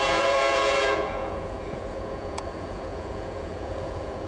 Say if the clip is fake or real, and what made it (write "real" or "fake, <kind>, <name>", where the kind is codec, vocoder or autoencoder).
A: fake, vocoder, Vocos